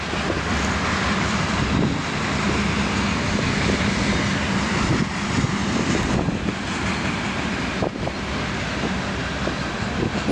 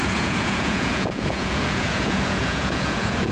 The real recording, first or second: first